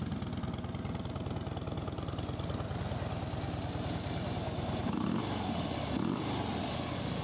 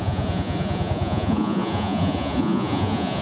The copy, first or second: second